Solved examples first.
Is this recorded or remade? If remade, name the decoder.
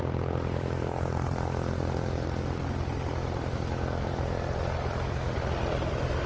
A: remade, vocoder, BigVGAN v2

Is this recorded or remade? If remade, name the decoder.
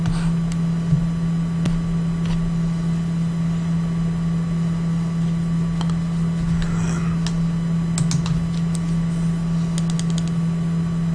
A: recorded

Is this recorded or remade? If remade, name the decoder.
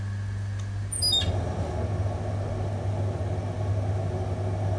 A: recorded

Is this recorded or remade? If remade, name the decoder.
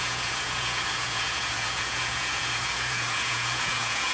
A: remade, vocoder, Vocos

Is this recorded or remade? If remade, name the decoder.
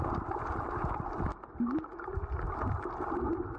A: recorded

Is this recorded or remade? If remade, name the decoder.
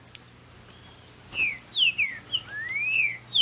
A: recorded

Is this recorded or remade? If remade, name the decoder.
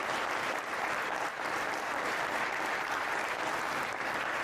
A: recorded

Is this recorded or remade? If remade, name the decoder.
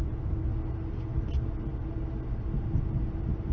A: recorded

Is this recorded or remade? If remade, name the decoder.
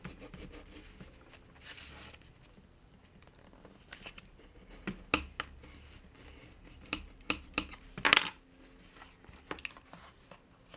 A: recorded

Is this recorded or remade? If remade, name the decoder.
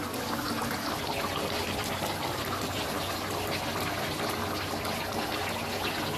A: recorded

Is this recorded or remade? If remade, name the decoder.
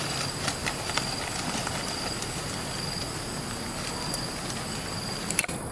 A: recorded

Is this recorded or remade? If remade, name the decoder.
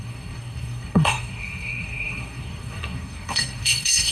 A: remade, codec, SNAC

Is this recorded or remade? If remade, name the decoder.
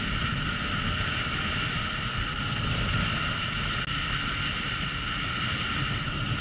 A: recorded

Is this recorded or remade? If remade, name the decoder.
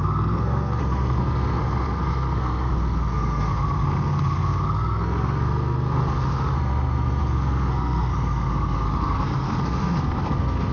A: remade, codec, SNAC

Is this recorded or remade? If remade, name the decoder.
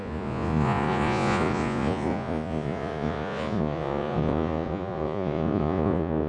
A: remade, vocoder, Vocos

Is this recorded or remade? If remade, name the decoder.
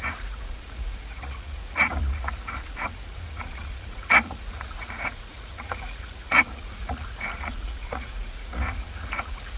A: remade, vocoder, Vocos